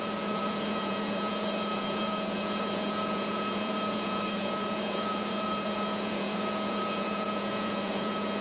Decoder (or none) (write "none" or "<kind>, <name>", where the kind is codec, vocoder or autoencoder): vocoder, Vocos